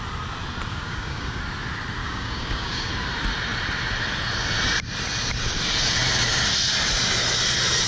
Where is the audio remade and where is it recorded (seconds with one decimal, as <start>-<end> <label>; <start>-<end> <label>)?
0.0-0.7 recorded; 0.7-1.4 remade; 1.4-2.0 recorded; 2.0-2.9 remade; 2.9-7.9 recorded